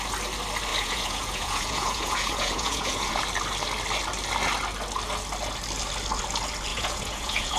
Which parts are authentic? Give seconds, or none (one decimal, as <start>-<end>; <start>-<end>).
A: 0.0-0.7; 3.2-6.7